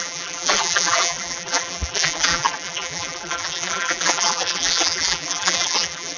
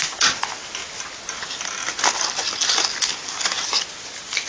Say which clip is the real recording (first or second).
second